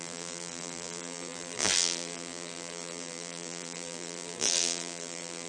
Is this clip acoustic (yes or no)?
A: no